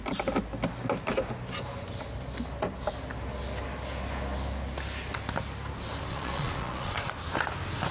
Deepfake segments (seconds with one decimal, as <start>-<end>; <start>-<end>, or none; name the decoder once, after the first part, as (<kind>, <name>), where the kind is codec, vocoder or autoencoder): 6.1-7.1 (vocoder, Vocos)